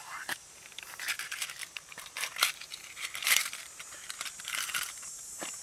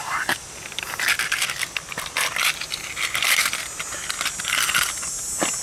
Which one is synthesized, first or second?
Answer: first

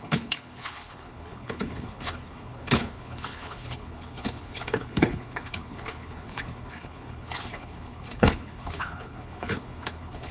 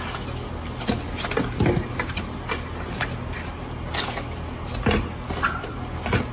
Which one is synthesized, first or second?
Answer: first